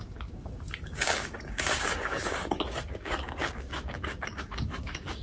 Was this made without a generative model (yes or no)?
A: no